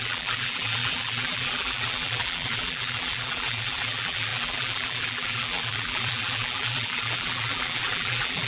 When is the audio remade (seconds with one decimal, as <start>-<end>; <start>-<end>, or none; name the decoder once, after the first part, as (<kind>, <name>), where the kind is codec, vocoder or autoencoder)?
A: 0.0-8.5 (vocoder, BigVGAN v2)